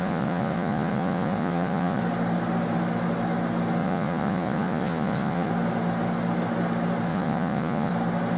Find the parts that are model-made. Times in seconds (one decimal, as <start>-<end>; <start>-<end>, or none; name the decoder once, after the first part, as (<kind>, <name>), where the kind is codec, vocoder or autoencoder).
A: 0.0-2.0 (vocoder, Vocos); 3.8-5.5; 7.1-7.9